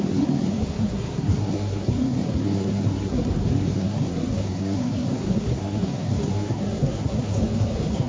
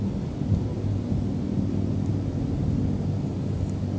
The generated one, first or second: first